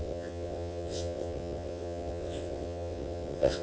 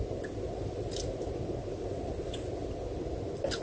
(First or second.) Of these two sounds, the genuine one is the second